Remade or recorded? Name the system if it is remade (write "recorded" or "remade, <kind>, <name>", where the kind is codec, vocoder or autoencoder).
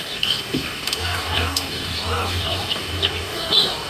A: remade, codec, DAC